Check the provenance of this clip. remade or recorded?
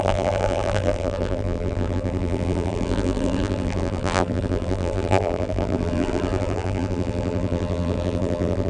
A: remade